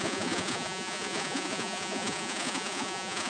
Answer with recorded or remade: remade